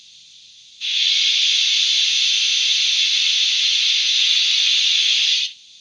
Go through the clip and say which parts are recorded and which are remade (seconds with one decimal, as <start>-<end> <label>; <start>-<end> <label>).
0.0-1.9 remade; 1.9-3.0 recorded; 3.0-5.8 remade